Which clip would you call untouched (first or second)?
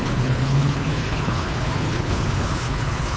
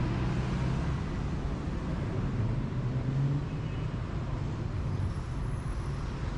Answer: second